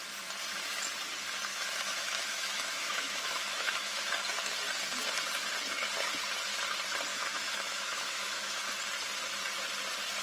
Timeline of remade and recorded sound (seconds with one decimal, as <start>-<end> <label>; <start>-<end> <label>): 0.0-1.5 recorded; 1.5-4.1 remade; 4.1-7.1 recorded; 7.1-8.6 remade; 8.6-10.2 recorded